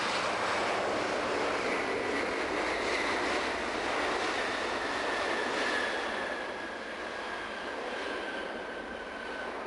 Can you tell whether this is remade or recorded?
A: recorded